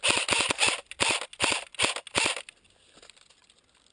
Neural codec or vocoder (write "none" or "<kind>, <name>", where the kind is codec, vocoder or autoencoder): none